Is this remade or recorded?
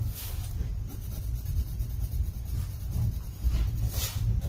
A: recorded